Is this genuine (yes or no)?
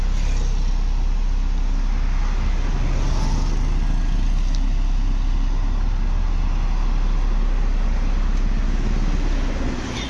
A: yes